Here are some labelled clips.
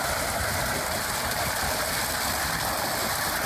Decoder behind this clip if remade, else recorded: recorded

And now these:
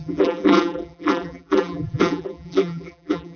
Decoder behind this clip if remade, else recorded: remade, vocoder, BigVGAN v2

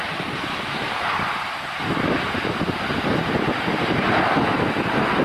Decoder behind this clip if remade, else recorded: recorded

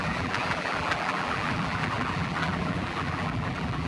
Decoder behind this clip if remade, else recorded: remade, vocoder, BigVGAN v2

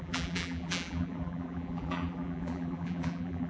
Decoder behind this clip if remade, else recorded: remade, vocoder, BigVGAN v2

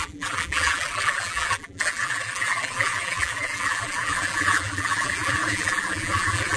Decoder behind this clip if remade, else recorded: remade, vocoder, BigVGAN v2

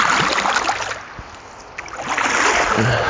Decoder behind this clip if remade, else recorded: recorded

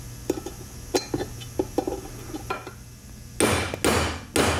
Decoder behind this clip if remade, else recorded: recorded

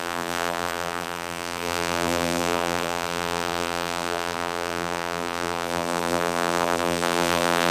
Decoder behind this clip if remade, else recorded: remade, vocoder, BigVGAN v2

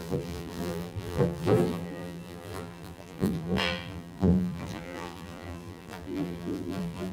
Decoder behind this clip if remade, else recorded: remade, vocoder, BigVGAN v2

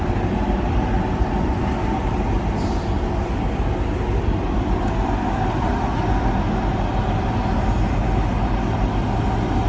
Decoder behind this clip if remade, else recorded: recorded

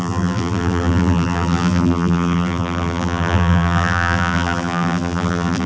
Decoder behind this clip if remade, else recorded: remade, vocoder, BigVGAN v2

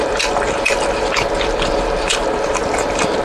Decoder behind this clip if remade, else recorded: remade, vocoder, BigVGAN v2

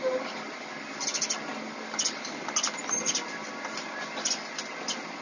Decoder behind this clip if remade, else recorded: recorded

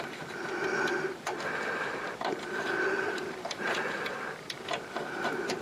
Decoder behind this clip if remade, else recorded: remade, vocoder, BigVGAN v2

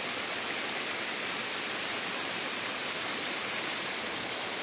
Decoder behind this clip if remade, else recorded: remade, vocoder, BigVGAN v2